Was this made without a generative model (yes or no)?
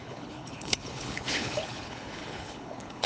no